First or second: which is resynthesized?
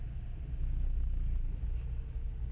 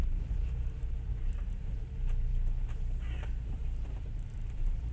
second